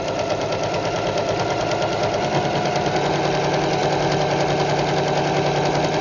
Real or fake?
real